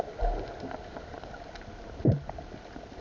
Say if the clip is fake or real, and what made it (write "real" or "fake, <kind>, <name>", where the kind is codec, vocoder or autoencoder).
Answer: real